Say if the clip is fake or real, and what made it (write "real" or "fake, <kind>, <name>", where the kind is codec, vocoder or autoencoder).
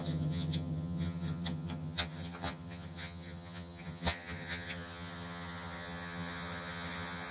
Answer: fake, vocoder, HiFi-GAN